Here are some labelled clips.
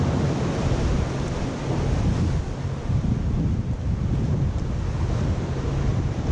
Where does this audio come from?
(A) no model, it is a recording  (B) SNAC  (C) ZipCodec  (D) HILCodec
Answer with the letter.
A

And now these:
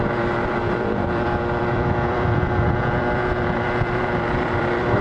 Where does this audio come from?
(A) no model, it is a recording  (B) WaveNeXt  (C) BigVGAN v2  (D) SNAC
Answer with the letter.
C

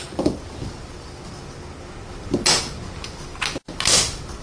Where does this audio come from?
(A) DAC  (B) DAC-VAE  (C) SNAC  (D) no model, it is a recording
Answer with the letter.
D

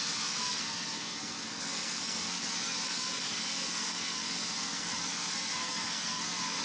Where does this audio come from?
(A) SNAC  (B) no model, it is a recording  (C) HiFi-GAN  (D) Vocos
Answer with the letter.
A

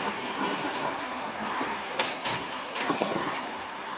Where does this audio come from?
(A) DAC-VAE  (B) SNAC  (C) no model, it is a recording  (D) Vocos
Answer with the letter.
B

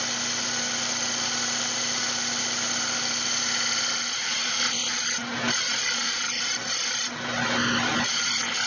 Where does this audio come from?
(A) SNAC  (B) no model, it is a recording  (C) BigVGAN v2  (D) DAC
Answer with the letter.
B